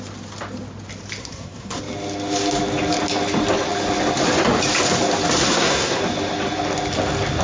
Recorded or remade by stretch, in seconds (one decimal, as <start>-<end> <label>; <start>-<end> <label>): 0.0-1.2 recorded; 1.2-1.8 remade; 1.8-5.4 recorded; 5.4-6.0 remade; 6.0-7.4 recorded